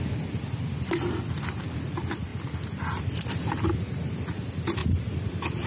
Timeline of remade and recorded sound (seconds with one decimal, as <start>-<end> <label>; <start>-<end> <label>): 0.0-5.7 recorded